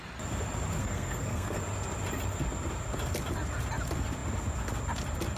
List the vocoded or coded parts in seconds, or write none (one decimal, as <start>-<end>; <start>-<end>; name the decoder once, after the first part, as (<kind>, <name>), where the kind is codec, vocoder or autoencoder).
0.8-1.6 (codec, SNAC)